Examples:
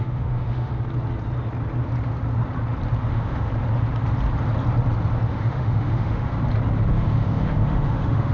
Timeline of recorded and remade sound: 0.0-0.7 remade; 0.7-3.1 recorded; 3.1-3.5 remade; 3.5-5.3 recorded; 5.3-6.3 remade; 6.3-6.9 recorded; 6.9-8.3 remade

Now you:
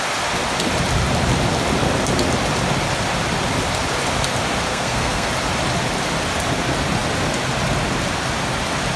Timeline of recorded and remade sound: 0.0-4.7 recorded; 4.7-5.3 remade; 5.3-9.0 recorded

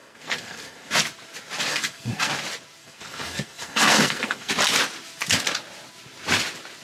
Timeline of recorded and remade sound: 0.0-0.9 remade; 0.9-1.7 recorded; 1.7-2.3 remade; 2.3-2.8 recorded; 2.8-4.5 remade; 4.5-6.8 recorded